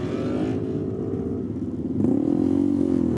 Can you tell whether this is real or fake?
real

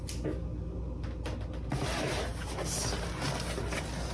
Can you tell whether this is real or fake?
real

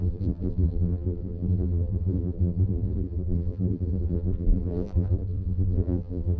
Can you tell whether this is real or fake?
fake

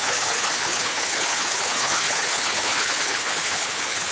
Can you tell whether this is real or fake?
fake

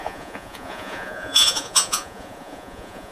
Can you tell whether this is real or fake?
fake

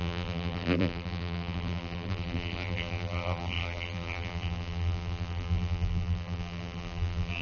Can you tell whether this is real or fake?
fake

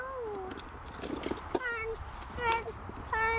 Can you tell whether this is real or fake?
real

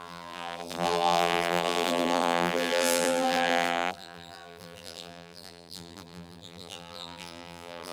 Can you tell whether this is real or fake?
fake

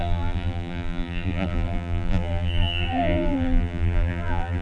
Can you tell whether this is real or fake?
fake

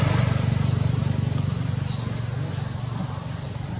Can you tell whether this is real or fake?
real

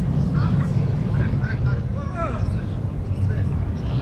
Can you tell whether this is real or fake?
fake